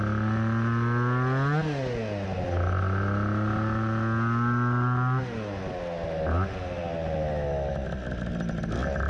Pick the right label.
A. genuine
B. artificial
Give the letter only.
A